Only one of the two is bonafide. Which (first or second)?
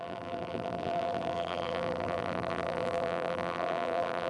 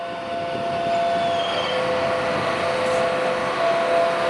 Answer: second